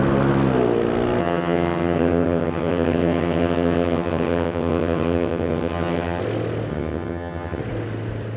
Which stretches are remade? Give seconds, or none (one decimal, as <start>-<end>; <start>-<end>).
1.2-6.2; 6.7-7.6